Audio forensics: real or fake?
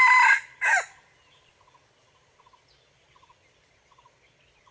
real